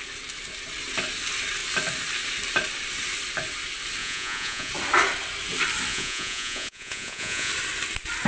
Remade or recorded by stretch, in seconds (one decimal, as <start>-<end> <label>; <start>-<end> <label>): 0.0-4.0 recorded; 4.0-4.7 remade; 4.7-5.9 recorded; 5.9-7.5 remade; 7.5-8.3 recorded